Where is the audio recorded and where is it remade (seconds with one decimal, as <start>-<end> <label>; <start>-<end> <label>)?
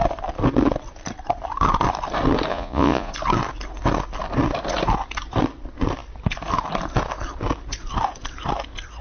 0.0-2.5 recorded; 2.5-3.1 remade; 3.1-9.0 recorded